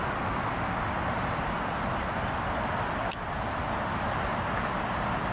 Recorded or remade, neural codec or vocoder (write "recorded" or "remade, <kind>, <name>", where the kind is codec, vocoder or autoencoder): recorded